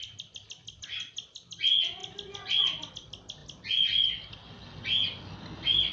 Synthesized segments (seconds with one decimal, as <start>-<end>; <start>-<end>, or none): none

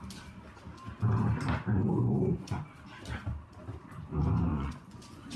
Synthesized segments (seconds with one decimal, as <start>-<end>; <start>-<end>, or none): 1.7-2.6; 4.5-5.4

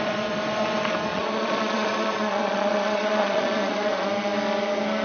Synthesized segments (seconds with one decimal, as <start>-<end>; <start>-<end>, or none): 1.1-4.1

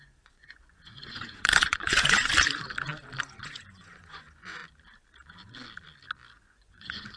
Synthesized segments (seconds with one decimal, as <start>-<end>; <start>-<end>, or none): 0.0-2.3; 3.2-4.6; 6.4-7.2

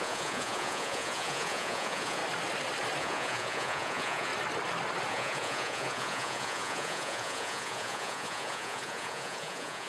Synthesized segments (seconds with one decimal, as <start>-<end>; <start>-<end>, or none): 0.0-2.2; 3.0-4.3; 5.1-9.9